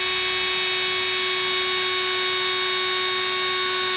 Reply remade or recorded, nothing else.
recorded